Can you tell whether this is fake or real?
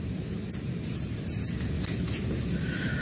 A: real